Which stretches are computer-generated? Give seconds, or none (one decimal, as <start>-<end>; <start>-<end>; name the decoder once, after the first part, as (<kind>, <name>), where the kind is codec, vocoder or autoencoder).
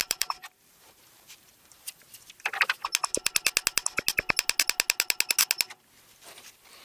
0.0-2.0 (vocoder, BigVGAN v2)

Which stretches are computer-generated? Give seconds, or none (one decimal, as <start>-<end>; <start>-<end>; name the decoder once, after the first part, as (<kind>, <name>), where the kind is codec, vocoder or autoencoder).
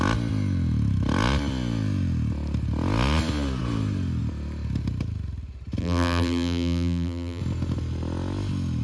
5.8-7.4 (vocoder, BigVGAN v2)